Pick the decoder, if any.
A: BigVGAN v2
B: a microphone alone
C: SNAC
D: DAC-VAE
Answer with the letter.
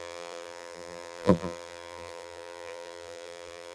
A